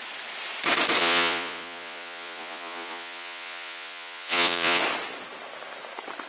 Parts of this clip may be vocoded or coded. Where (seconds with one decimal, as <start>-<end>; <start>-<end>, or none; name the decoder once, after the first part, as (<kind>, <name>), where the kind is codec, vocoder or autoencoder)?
1.0-4.8 (vocoder, Vocos)